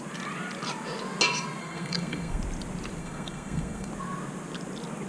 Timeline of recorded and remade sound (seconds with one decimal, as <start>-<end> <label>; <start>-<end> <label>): 0.0-1.6 recorded; 1.6-2.4 remade; 2.4-3.0 recorded; 3.0-3.9 remade; 3.9-5.1 recorded